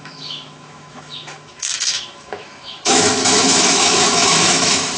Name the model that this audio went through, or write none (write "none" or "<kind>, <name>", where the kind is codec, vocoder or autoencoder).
autoencoder, DAC-VAE